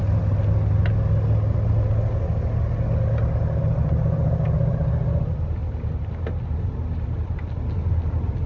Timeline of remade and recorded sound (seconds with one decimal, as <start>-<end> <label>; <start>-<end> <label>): 0.0-8.5 recorded